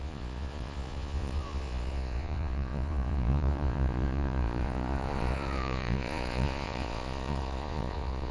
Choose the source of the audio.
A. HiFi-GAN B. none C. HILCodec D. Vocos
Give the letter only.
D